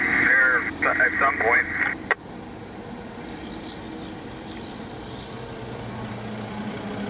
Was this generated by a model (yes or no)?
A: no